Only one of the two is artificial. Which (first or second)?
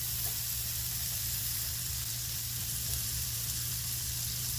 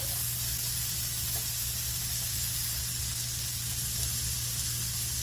first